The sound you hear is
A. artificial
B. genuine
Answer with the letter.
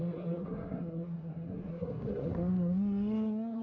A